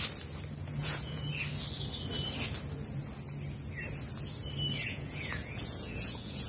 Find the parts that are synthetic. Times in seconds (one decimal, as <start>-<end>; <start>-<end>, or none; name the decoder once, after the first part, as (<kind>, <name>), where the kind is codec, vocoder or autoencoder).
0.8-1.3 (vocoder, Vocos); 4.8-6.5